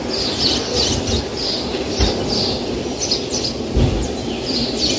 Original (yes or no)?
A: yes